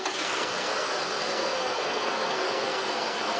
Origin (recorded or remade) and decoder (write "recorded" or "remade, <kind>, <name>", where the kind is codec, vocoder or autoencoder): remade, codec, SNAC